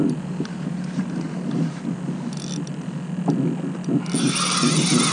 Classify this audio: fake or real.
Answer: real